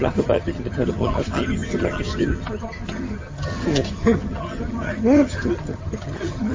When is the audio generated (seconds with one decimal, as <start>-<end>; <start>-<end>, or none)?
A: 0.0-6.5

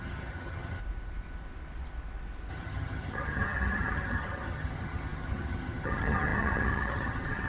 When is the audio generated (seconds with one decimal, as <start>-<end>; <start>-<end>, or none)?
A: 0.0-0.8; 2.5-7.5